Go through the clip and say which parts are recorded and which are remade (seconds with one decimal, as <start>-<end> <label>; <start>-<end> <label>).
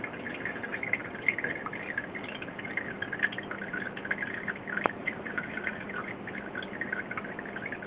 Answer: 0.0-5.0 recorded; 5.0-6.1 remade; 6.1-7.9 recorded